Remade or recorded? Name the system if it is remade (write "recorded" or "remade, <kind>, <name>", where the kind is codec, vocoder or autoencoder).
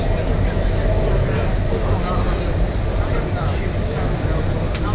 recorded